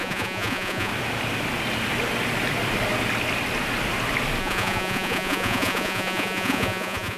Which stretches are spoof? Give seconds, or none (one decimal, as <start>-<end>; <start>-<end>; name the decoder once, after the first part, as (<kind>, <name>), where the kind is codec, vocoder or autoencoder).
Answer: 0.0-0.9 (vocoder, Vocos); 4.4-7.2